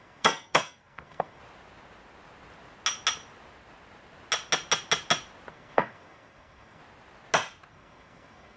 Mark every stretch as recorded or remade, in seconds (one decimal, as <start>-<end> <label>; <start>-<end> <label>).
0.0-1.4 remade; 1.4-5.5 recorded; 5.5-6.8 remade; 6.8-7.7 recorded; 7.7-8.6 remade